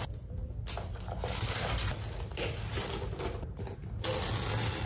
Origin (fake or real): real